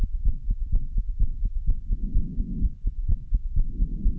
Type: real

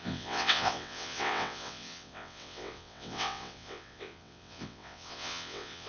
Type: fake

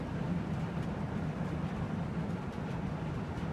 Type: fake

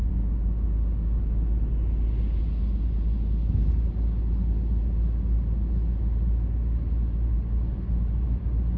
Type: real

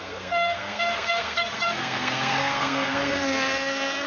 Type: fake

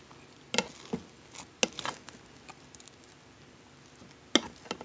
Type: real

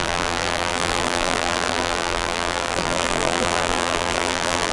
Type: fake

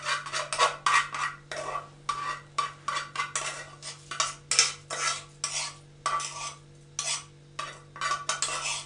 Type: real